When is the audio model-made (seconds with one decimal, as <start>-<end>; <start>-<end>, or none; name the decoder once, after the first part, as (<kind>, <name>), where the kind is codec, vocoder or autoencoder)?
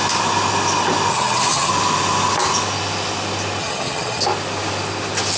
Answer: 1.1-1.7 (vocoder, HiFi-GAN); 3.6-4.2